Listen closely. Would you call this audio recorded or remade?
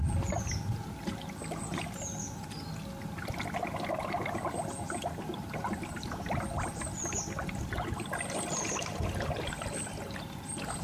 recorded